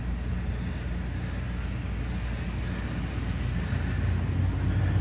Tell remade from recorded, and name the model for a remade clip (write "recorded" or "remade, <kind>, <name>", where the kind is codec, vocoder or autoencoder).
recorded